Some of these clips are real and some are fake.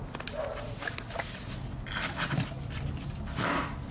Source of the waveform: real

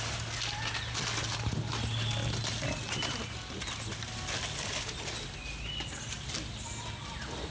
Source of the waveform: real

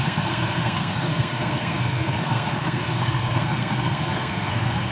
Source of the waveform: fake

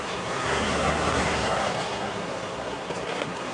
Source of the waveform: fake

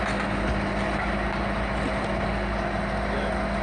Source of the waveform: real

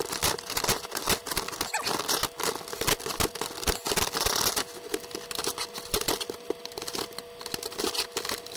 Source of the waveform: real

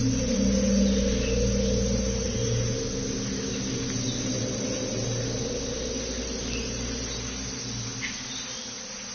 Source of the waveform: real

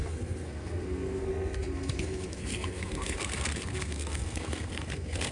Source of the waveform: fake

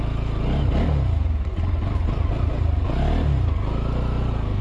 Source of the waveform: real